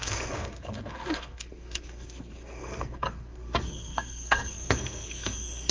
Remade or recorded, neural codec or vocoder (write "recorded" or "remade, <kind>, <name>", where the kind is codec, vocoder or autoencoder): remade, codec, SNAC